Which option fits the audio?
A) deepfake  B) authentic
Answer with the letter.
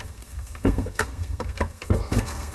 A